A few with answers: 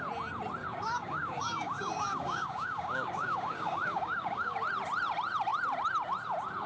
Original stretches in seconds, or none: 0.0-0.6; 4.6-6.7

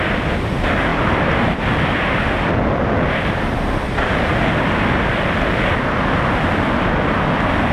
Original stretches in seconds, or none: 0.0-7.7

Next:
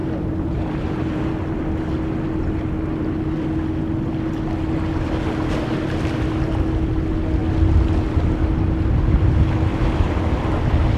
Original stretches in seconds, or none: 1.3-11.0